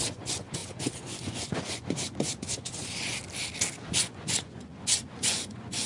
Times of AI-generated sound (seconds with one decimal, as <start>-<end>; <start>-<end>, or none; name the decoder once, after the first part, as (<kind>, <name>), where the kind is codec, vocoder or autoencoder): 0.0-3.2 (vocoder, Vocos); 3.9-5.9